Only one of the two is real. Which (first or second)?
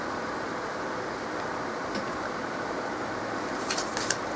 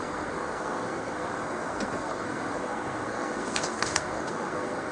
first